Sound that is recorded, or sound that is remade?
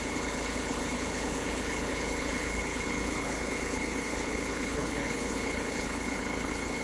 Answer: remade